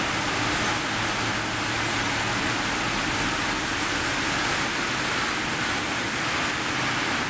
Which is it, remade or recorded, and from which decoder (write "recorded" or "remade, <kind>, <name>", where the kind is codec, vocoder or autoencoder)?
recorded